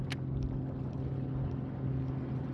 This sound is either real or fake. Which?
real